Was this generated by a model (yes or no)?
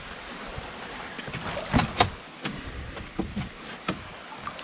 no